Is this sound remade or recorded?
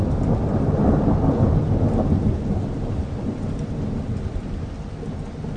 recorded